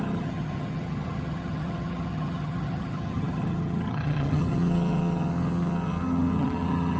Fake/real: fake